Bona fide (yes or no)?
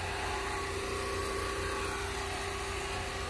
yes